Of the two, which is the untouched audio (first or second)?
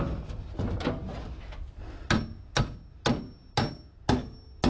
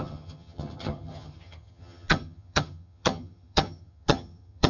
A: first